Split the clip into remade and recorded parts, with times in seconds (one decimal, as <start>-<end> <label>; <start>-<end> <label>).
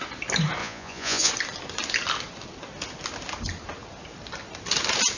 0.0-0.6 recorded; 0.6-1.3 remade; 1.3-5.2 recorded